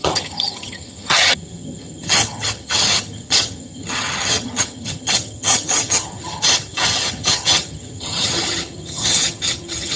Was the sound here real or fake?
fake